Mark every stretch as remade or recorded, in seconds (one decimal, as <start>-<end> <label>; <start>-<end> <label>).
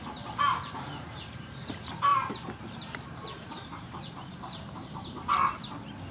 0.0-0.5 recorded; 0.5-1.7 remade; 1.7-2.1 recorded; 2.1-4.9 remade; 4.9-6.1 recorded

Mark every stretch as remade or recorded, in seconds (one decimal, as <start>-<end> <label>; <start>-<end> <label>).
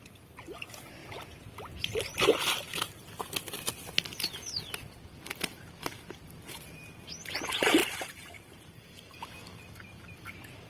0.0-7.8 recorded; 7.8-9.2 remade; 9.2-10.7 recorded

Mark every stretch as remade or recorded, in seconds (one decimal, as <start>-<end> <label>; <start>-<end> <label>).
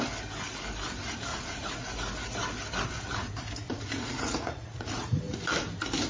0.0-1.3 recorded; 1.3-1.9 remade; 1.9-3.6 recorded; 3.6-5.2 remade; 5.2-6.1 recorded